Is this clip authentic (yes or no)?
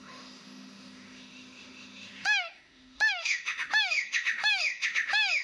no